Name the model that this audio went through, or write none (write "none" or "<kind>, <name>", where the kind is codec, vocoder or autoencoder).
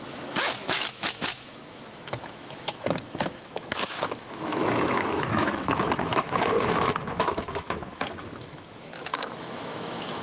autoencoder, DAC-VAE